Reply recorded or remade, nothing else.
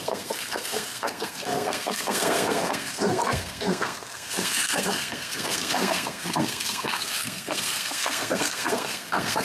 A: remade